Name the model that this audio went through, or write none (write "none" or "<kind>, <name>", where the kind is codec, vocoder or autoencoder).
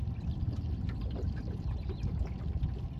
none